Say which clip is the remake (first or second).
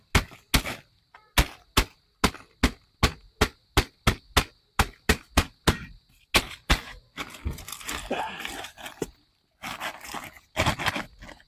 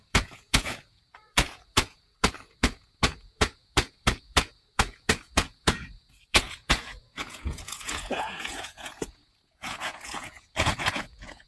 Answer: second